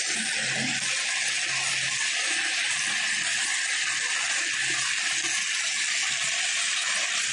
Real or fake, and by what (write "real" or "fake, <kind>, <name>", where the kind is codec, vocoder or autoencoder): real